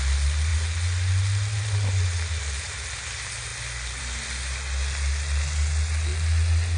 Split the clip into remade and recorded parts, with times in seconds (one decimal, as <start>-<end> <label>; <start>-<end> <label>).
0.0-6.8 recorded